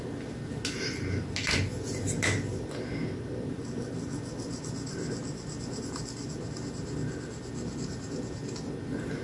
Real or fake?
real